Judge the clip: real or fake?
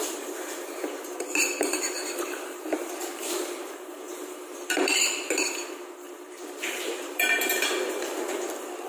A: fake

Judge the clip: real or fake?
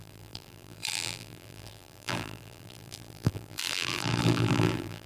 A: fake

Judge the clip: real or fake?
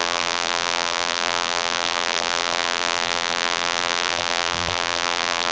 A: fake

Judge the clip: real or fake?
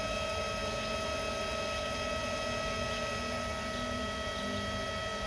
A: real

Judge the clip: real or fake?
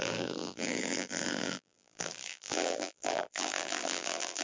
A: fake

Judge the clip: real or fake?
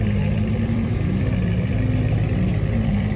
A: fake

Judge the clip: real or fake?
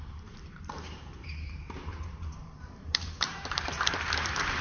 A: fake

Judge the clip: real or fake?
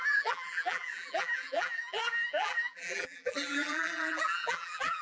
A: fake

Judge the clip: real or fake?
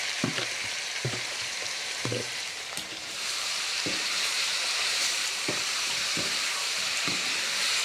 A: fake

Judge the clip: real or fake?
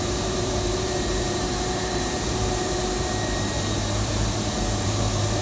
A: fake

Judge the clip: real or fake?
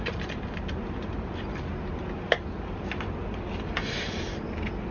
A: real